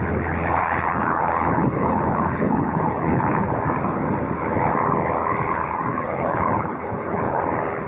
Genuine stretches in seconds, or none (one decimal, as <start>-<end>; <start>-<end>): 0.0-0.6; 3.5-5.9; 7.4-7.9